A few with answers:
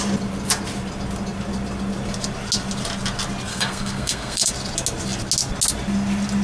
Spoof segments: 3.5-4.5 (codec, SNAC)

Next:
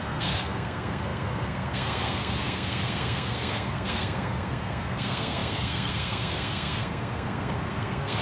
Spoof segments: 0.0-8.2 (codec, SNAC)

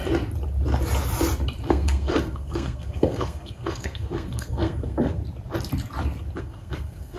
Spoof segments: 1.7-5.2 (codec, SNAC); 6.4-7.2

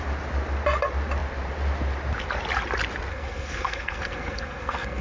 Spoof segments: 3.1-5.0 (codec, SNAC)

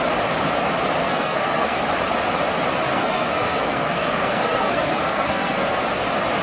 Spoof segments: 1.0-1.8 (codec, SNAC); 2.9-5.8

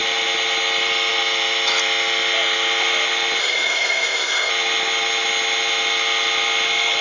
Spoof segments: 3.4-4.5 (codec, SNAC)

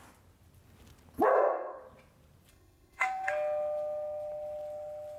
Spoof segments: 1.3-1.8 (codec, SNAC); 2.5-3.3